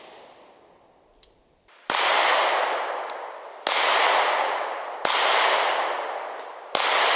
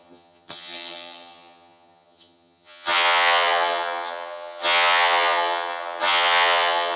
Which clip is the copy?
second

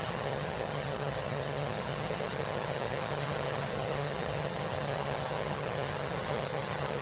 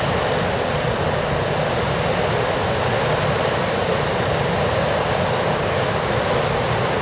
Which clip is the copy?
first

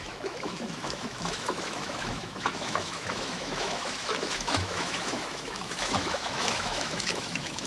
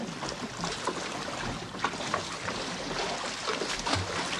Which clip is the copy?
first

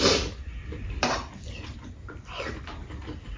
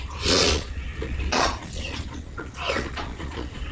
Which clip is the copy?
second